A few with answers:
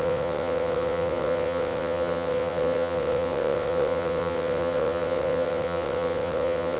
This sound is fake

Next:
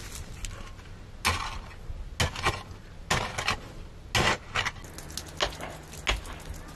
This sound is real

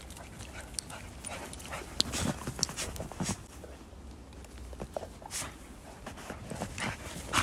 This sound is real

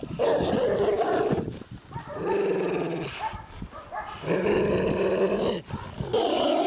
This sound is real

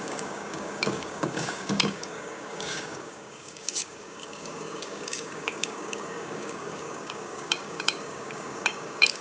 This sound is fake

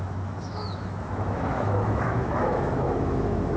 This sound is fake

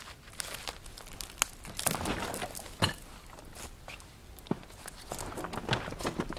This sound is real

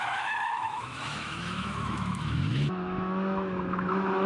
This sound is fake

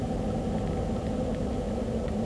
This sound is real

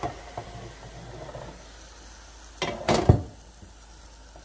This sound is real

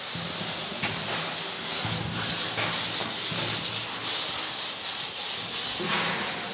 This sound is real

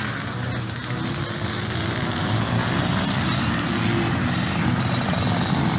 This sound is real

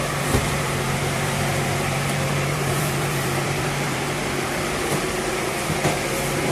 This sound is fake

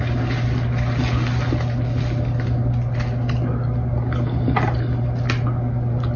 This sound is real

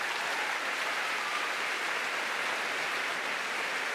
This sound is fake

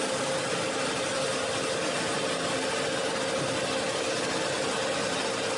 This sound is real